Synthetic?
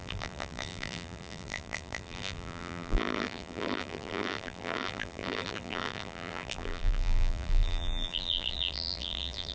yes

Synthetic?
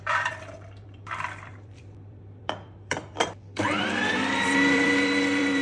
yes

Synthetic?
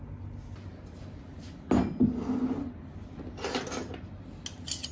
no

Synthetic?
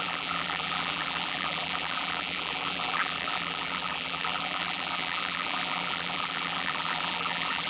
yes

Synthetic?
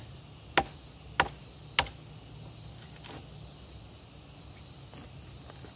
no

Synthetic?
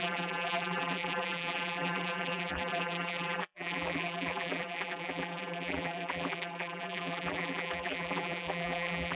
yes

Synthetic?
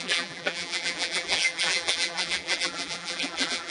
yes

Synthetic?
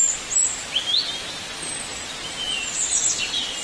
yes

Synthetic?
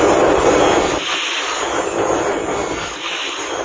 yes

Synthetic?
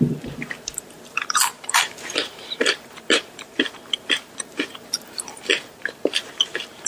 yes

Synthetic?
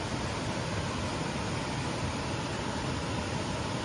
no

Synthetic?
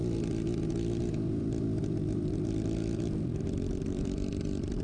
yes